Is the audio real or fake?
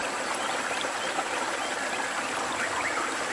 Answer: real